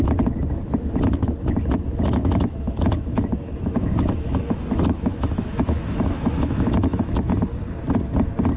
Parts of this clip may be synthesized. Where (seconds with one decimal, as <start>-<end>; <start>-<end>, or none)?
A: 2.2-7.3